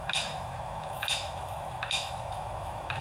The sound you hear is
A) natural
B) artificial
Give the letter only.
B